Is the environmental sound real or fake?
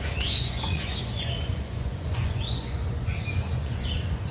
fake